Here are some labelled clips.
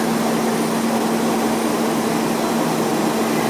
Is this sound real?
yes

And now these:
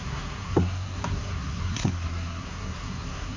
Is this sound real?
no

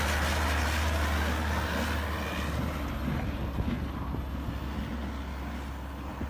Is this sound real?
yes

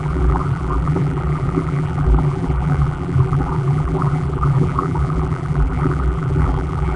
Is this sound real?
no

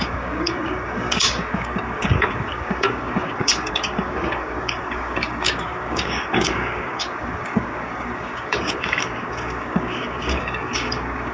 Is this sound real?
no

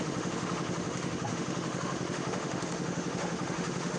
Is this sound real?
no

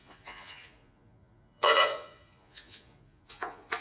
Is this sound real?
no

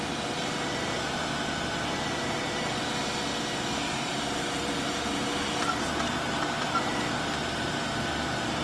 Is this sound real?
no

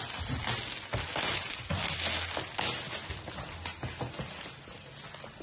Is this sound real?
yes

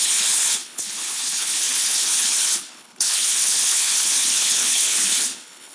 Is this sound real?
no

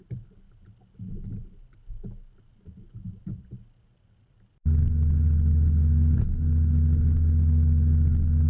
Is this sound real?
yes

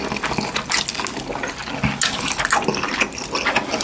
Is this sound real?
yes